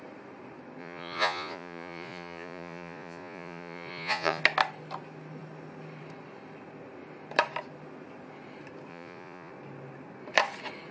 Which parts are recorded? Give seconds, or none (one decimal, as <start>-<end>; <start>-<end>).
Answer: 0.0-0.8; 4.4-8.9; 9.5-10.9